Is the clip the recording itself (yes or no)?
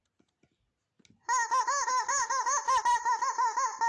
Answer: yes